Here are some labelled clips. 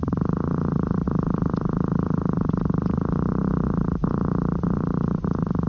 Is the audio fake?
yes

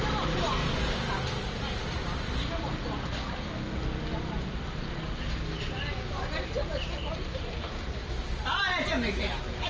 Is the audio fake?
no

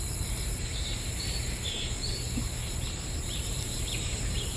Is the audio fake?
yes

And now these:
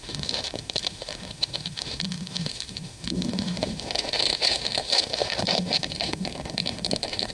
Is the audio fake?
yes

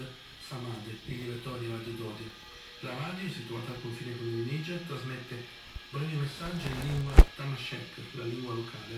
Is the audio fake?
no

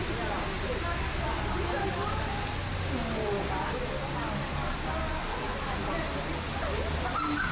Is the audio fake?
no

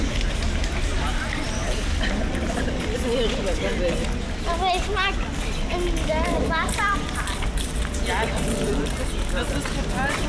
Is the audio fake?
no